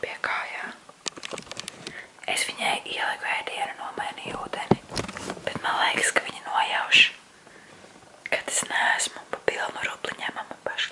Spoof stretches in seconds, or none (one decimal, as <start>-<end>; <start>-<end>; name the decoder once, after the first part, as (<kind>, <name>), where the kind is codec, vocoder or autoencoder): 5.4-6.4 (autoencoder, DAC-VAE)